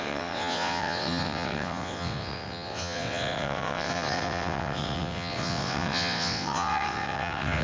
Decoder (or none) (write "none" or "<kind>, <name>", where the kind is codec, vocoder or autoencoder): vocoder, WaveNeXt